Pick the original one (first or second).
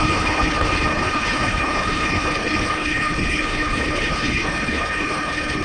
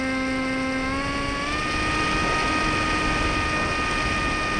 second